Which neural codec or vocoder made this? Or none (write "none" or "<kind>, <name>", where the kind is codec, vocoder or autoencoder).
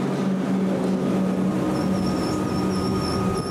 none